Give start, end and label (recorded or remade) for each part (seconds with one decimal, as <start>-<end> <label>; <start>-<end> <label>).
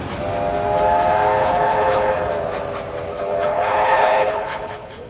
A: 0.0-1.4 recorded; 1.4-2.3 remade; 2.3-3.1 recorded; 3.1-5.1 remade